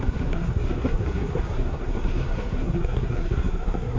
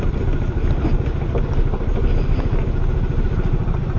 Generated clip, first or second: first